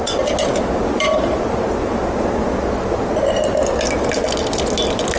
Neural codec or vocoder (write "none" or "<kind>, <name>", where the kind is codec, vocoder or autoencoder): none